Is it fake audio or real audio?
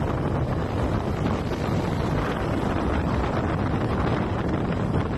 real